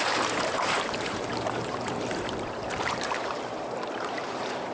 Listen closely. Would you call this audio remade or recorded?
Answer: remade